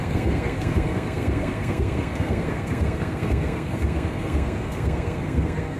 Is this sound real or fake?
fake